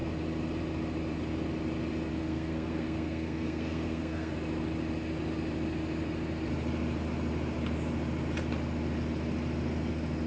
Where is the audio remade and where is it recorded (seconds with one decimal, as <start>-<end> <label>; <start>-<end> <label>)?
0.0-2.1 recorded; 2.1-4.3 remade; 4.3-10.3 recorded